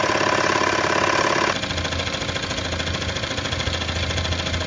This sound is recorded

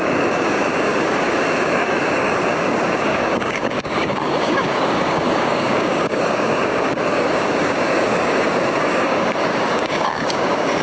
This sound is remade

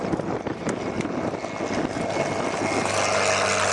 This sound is recorded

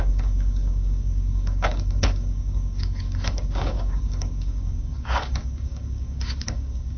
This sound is remade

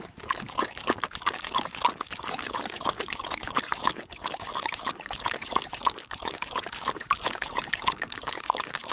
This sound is remade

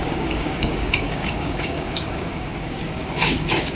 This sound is remade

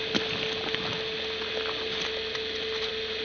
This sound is recorded